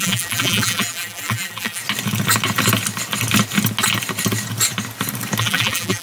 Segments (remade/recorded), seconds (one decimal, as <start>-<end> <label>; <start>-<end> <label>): 0.0-1.8 remade; 1.8-5.4 recorded; 5.4-6.0 remade